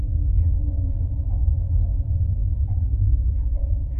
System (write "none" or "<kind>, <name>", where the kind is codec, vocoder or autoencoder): none